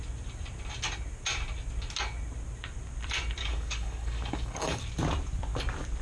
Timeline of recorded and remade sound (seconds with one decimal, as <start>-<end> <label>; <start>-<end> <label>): 0.0-3.4 recorded; 3.4-4.8 remade; 4.8-6.0 recorded